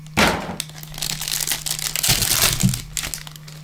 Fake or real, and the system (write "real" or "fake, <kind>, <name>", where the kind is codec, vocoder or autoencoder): real